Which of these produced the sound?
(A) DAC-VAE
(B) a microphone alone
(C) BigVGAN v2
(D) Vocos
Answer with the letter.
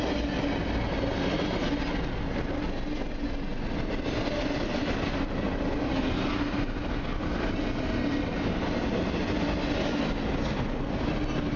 B